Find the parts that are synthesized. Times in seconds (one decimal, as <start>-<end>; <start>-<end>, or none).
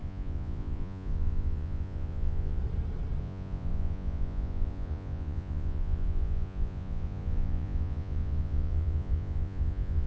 0.0-2.6; 3.2-10.1